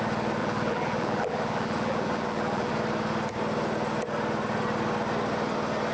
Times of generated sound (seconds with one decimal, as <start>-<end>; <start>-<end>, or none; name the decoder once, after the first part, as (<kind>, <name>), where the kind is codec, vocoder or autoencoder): 0.4-2.7 (vocoder, BigVGAN v2)

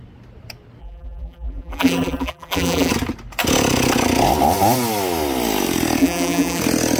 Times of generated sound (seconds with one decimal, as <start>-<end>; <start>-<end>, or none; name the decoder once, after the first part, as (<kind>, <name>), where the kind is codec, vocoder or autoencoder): 0.8-2.9 (vocoder, BigVGAN v2); 6.0-6.6

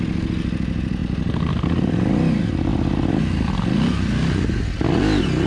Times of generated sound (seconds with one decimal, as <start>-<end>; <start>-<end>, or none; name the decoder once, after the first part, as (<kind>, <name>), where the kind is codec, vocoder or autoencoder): none

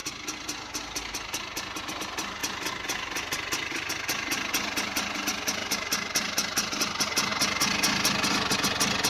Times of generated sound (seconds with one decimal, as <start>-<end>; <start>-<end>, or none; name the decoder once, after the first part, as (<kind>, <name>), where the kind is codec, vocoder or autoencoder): none

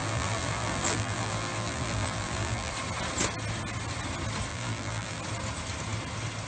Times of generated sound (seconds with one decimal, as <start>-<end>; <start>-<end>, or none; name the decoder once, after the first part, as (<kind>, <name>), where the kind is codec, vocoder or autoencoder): 0.0-2.7 (vocoder, BigVGAN v2); 4.5-5.2